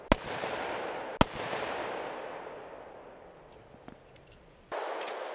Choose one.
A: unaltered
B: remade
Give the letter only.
A